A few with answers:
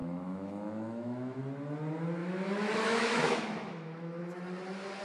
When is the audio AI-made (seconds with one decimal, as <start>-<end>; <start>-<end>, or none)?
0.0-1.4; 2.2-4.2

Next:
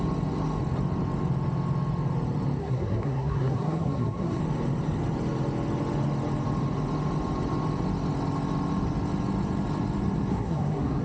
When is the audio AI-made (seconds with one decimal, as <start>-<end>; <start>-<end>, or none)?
2.6-4.4; 10.3-11.0

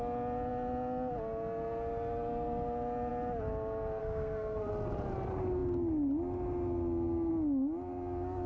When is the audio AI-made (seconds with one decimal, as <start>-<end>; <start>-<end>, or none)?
4.0-4.7

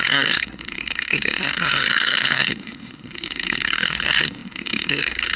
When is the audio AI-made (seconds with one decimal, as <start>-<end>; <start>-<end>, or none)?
0.0-5.4

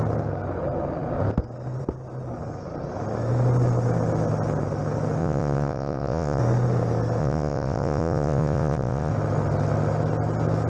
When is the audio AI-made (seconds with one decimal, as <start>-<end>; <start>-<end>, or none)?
5.2-6.4; 7.2-9.1

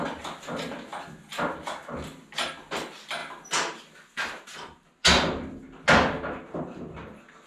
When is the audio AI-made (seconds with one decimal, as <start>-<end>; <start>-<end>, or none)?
none

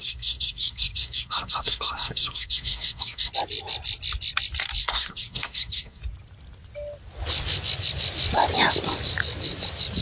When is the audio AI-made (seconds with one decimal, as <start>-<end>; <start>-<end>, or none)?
0.0-3.3; 4.8-6.0

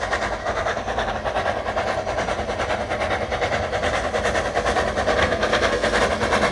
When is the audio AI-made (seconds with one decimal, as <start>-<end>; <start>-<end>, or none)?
0.4-1.1; 5.2-6.0